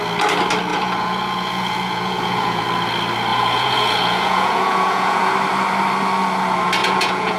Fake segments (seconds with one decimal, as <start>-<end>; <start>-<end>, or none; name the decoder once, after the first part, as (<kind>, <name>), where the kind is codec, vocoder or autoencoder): 0.7-2.6 (vocoder, Vocos); 3.3-5.3; 6.8-7.4

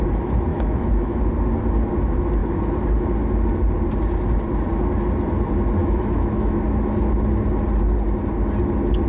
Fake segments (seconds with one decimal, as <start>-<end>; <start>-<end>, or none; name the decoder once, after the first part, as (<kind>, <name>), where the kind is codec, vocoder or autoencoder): 0.5-1.2 (autoencoder, DAC-VAE); 5.8-6.6